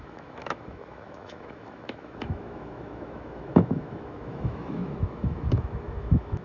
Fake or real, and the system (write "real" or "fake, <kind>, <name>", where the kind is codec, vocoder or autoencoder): fake, autoencoder, DAC-VAE